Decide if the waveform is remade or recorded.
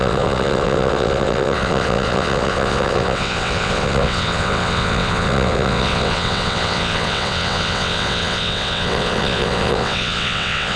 remade